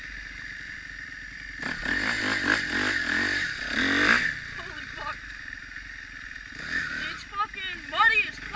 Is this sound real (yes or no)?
yes